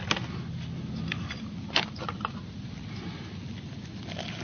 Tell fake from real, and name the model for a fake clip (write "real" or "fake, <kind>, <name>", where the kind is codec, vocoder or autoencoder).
real